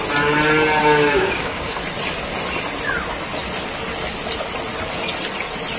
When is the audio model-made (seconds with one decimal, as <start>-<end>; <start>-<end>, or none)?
0.8-1.7